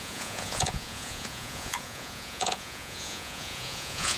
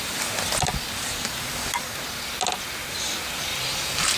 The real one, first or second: second